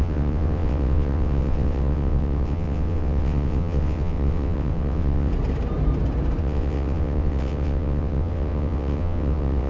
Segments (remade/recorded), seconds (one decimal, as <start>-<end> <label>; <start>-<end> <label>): 0.0-5.3 remade; 5.3-6.4 recorded; 6.4-9.7 remade